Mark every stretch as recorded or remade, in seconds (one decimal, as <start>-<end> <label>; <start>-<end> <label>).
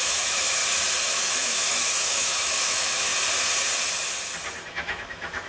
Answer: 0.0-0.6 remade; 0.6-1.1 recorded; 1.1-3.1 remade; 3.1-4.7 recorded; 4.7-5.5 remade